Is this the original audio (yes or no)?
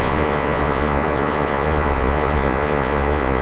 no